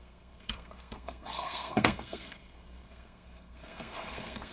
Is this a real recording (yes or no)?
no